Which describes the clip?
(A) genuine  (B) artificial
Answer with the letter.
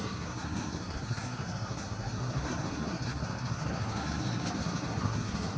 B